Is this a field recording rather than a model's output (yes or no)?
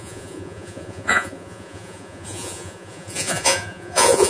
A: no